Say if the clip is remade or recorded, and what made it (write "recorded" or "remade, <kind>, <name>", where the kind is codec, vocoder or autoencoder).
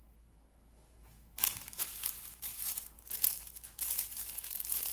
remade, autoencoder, DAC-VAE